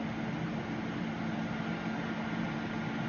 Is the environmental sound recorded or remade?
recorded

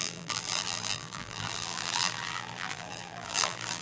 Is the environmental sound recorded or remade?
remade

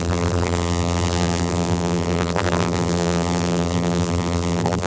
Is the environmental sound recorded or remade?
remade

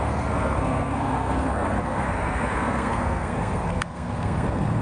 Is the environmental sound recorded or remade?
remade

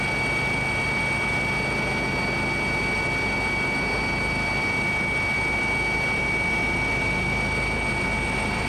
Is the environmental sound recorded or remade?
recorded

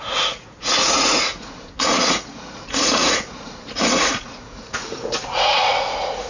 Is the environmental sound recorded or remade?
remade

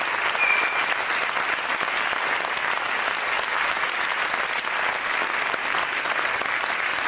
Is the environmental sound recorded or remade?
recorded